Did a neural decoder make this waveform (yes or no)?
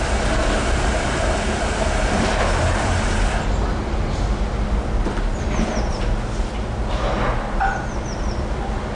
yes